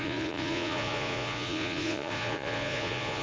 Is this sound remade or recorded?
remade